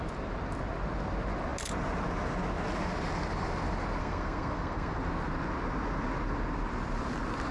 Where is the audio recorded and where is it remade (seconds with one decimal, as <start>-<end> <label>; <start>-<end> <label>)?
0.0-4.0 recorded; 4.0-5.0 remade; 5.0-7.5 recorded